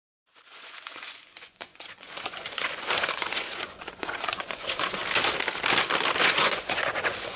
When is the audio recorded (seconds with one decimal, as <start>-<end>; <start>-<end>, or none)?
5.0-6.3